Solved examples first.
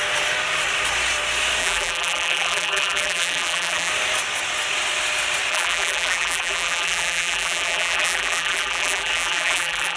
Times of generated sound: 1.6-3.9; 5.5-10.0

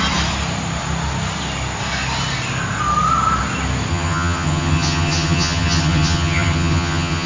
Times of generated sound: 3.9-7.3

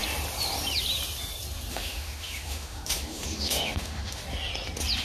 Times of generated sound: 1.7-4.2

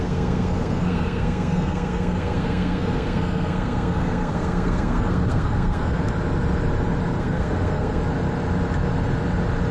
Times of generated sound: 0.0-6.0; 7.2-8.0

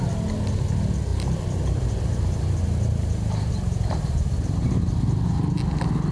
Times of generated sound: 1.1-4.8

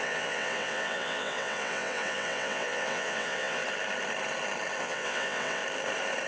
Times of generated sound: 0.0-3.6; 4.8-5.6